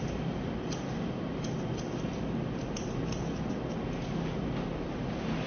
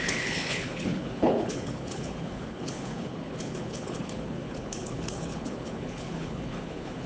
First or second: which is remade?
second